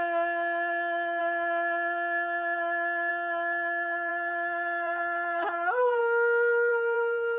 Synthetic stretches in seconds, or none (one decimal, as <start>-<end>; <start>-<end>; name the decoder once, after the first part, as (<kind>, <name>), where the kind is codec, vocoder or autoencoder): 4.1-6.0 (vocoder, BigVGAN v2); 6.7-7.4